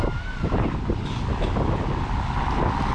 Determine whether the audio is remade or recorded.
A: recorded